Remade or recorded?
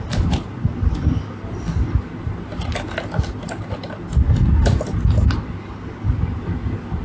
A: recorded